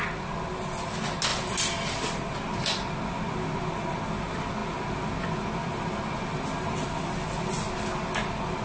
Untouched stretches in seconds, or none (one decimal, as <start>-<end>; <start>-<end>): 0.0-8.6